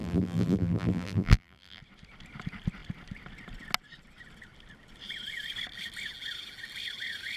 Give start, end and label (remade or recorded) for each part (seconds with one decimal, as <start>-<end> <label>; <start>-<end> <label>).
0.0-1.8 remade; 1.8-7.4 recorded